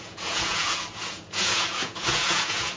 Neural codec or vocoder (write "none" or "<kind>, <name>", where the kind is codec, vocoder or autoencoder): vocoder, Vocos